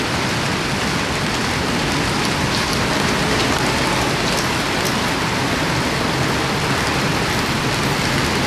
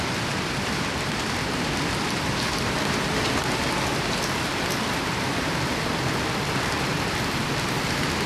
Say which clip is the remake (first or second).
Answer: second